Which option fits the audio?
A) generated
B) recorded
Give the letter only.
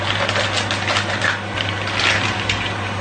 B